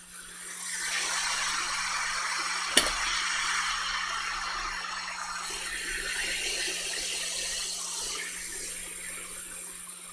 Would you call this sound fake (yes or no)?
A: no